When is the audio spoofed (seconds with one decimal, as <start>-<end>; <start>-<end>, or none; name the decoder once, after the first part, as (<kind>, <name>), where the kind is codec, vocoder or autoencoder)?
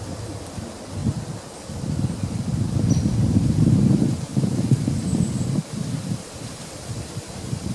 1.0-3.8 (vocoder, BigVGAN v2); 4.3-7.7